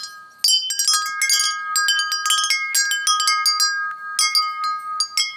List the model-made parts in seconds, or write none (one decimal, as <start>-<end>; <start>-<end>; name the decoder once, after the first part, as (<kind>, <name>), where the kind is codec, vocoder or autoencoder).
none